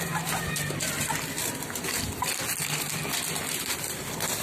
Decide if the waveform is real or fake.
real